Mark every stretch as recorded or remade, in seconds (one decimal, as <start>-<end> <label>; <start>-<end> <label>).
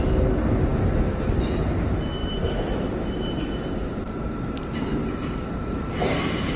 0.0-2.2 recorded; 2.2-6.6 remade